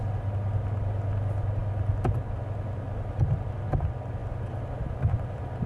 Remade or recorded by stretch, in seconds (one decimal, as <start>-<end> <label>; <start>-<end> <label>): 0.0-5.7 recorded